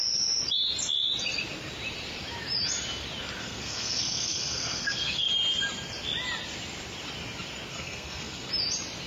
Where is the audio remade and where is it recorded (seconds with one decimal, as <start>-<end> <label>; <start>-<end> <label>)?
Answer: 0.0-3.4 recorded; 3.4-5.3 remade; 5.3-7.7 recorded; 7.7-8.5 remade; 8.5-9.1 recorded